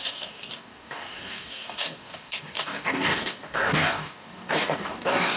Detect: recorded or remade remade